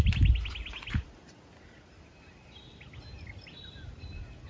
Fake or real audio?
real